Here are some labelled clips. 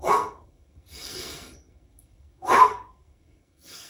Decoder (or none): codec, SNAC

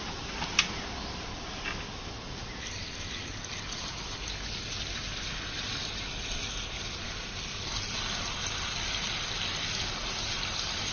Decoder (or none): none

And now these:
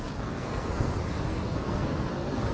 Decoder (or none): codec, SNAC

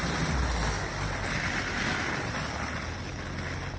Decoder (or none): none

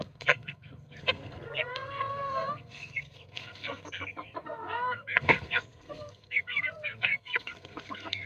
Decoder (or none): codec, SNAC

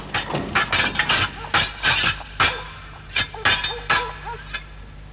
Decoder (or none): none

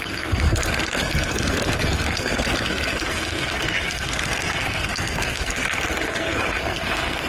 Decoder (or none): codec, SNAC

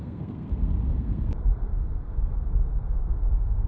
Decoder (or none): codec, SNAC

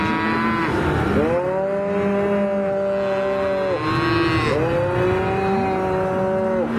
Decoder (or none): none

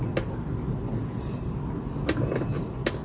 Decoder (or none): none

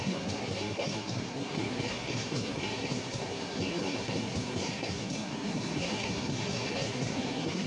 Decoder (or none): codec, SNAC